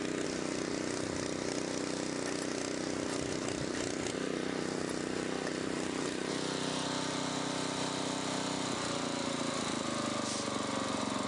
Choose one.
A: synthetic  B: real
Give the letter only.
B